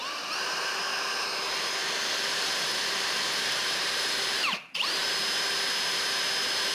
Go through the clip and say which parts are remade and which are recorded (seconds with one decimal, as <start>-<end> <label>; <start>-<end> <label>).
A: 0.0-0.8 remade; 0.8-1.8 recorded; 1.8-5.1 remade; 5.1-6.7 recorded